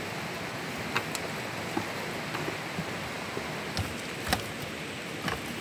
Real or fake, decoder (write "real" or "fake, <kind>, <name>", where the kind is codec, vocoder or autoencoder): real